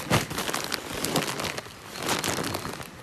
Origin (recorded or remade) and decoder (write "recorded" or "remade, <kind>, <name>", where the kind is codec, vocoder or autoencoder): recorded